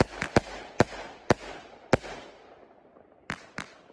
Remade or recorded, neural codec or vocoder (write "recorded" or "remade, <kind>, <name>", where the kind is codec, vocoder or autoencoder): recorded